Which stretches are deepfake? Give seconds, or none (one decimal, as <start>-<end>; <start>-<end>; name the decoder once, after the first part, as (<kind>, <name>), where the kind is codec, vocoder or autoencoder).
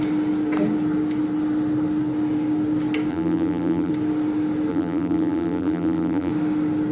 3.1-3.9 (vocoder, BigVGAN v2); 4.7-6.3